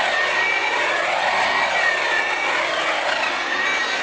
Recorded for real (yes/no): yes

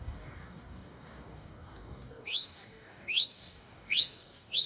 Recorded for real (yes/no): no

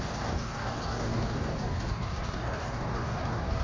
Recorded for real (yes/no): no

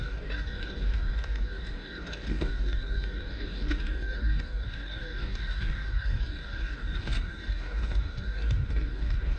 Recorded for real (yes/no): no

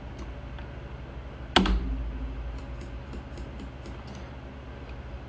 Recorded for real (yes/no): yes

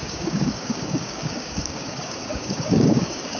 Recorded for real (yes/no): no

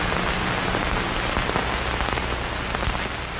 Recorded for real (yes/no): yes